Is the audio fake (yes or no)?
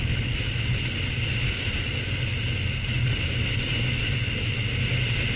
no